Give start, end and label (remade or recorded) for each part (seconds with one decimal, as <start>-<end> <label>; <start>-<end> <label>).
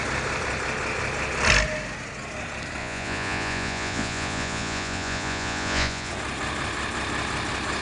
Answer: 0.0-2.8 recorded; 2.8-6.1 remade; 6.1-7.8 recorded